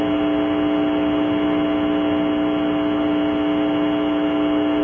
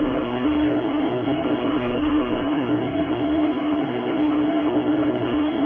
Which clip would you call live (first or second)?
first